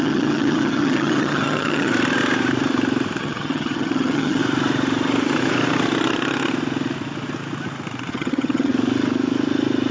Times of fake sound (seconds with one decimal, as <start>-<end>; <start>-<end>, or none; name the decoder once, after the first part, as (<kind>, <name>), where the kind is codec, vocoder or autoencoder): 0.0-1.9 (vocoder, HiFi-GAN); 3.2-4.4; 8.1-8.7